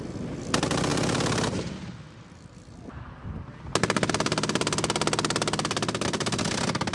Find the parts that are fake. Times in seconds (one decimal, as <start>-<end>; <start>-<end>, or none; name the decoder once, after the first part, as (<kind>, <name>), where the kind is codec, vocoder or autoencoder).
none